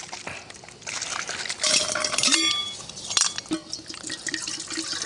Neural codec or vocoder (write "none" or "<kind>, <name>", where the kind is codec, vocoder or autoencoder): none